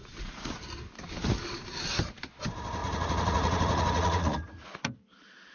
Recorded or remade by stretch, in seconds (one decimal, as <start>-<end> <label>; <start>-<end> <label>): 0.0-0.6 remade; 0.6-2.8 recorded; 2.8-4.7 remade; 4.7-5.5 recorded